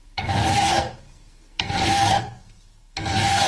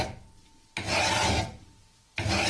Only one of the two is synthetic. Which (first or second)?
first